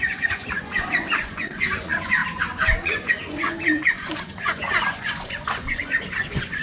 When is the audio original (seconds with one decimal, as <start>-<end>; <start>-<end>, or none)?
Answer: none